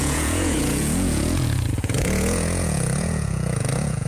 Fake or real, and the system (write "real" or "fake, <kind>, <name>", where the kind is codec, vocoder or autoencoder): fake, vocoder, Vocos